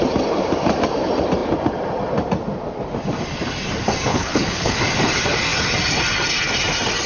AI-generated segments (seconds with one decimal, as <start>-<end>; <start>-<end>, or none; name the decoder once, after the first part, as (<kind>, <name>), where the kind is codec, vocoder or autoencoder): 4.1-4.8 (codec, HILCodec)